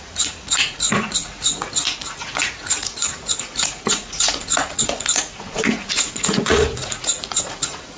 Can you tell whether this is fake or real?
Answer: fake